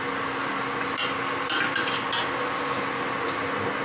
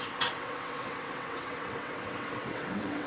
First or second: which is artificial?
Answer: second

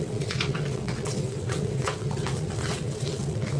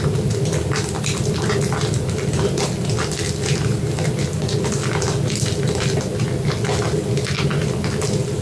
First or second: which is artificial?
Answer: first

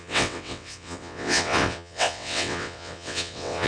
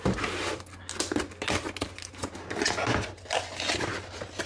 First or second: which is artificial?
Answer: first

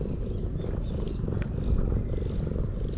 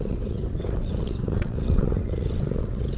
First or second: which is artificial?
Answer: second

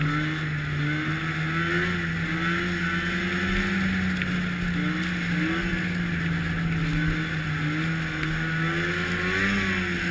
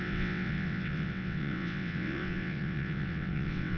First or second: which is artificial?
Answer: second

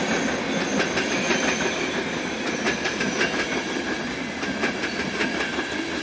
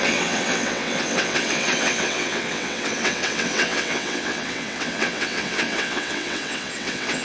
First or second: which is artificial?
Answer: second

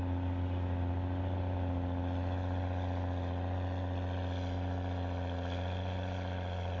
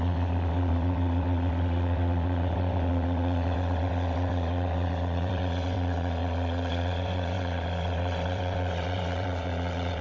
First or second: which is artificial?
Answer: second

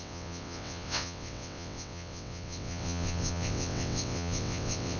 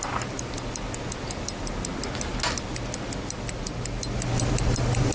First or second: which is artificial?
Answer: first